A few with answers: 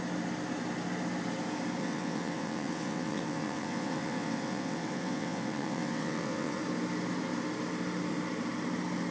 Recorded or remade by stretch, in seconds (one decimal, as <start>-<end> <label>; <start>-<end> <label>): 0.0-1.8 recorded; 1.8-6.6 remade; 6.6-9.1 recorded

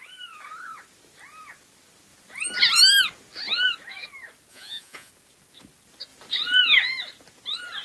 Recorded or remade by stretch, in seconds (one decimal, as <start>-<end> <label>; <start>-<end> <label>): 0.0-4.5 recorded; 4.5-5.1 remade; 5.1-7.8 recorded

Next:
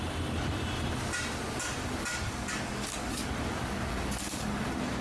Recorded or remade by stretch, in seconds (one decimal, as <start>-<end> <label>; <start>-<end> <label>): 0.0-1.8 recorded; 1.8-5.0 remade